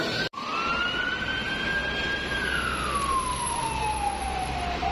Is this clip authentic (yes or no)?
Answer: yes